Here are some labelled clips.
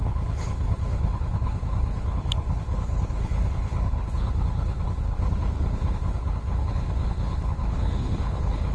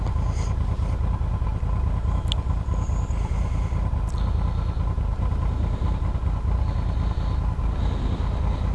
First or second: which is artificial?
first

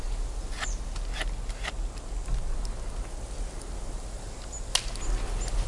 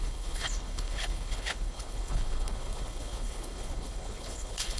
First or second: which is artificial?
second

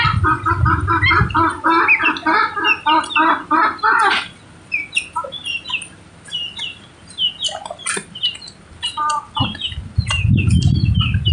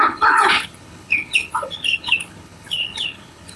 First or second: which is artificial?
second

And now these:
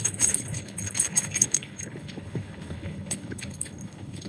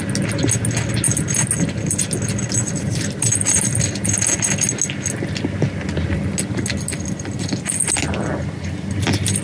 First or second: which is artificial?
first